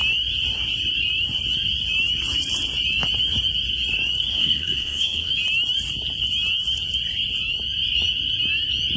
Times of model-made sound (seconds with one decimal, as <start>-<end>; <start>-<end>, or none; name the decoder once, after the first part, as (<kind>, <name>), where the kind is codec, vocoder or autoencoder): 4.3-5.3 (codec, SNAC)